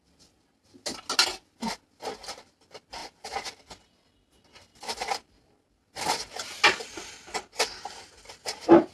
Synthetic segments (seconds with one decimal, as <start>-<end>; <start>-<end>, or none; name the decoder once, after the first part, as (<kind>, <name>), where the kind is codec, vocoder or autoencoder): none